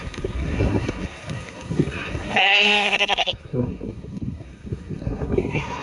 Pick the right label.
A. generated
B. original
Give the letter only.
A